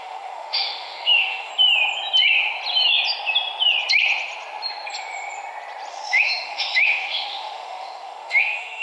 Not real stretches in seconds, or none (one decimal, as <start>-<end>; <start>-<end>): 0.0-1.5; 5.9-8.8